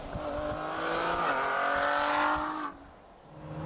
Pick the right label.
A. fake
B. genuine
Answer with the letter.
B